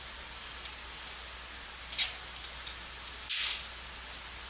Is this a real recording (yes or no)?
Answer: yes